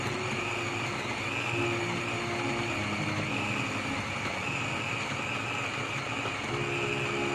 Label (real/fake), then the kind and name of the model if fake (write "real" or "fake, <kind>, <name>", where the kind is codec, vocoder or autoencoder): real